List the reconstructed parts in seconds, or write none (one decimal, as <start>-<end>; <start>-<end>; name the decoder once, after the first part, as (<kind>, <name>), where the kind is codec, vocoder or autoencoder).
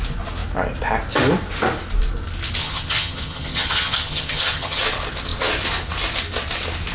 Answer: 2.6-4.8 (vocoder, HiFi-GAN)